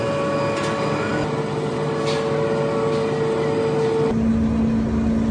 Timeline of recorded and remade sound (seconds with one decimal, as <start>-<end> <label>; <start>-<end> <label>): 0.0-5.3 recorded